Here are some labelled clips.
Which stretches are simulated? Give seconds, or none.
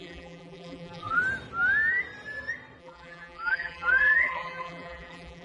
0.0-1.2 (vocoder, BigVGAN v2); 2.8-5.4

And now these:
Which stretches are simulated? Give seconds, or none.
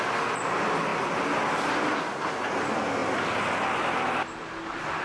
none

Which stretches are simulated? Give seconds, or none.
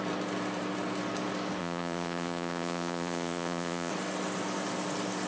1.6-3.9 (vocoder, Vocos)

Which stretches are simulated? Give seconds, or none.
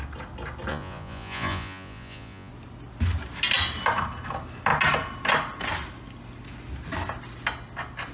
0.7-2.5 (vocoder, Vocos)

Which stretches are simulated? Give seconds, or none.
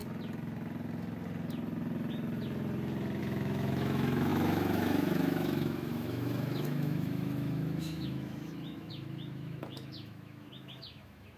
3.2-11.4 (autoencoder, DAC-VAE)